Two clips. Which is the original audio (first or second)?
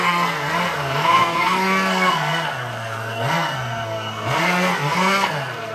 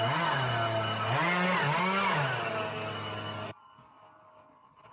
second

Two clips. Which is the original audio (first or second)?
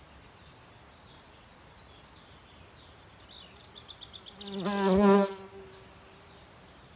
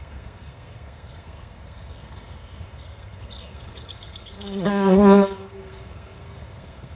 first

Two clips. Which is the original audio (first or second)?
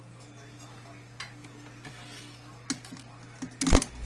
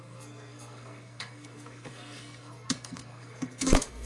first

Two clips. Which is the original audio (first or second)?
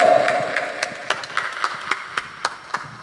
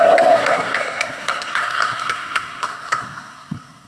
first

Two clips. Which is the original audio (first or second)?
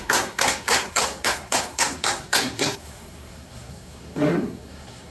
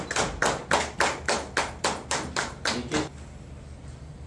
second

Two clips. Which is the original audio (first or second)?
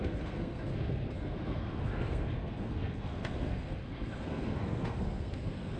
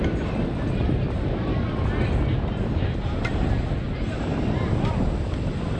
second